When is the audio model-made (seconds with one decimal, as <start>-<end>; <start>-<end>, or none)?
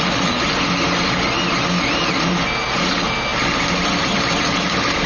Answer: none